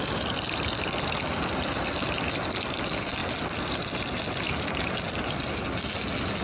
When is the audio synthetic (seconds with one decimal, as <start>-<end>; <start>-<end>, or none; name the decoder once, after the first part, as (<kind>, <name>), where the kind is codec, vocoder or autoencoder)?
none